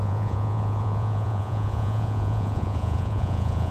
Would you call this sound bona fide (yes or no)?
no